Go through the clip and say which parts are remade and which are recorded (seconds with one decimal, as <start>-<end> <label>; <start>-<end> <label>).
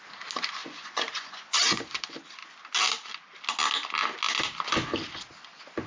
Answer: 0.0-0.6 recorded; 0.6-2.0 remade; 2.0-5.9 recorded